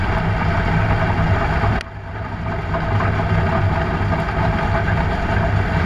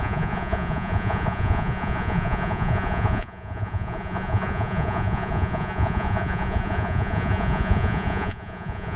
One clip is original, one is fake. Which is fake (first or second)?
second